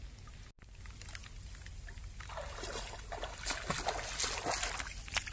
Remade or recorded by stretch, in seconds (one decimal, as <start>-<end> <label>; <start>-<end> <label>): 0.0-5.3 recorded